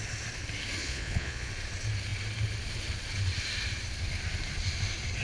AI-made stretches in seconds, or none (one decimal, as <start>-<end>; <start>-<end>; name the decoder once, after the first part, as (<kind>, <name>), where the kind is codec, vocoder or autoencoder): 0.8-1.5 (vocoder, Vocos)